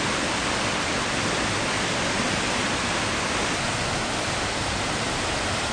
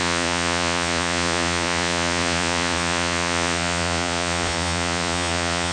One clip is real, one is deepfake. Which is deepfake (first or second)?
second